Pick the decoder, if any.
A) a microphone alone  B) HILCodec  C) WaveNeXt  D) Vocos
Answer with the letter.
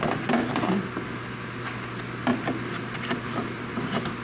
A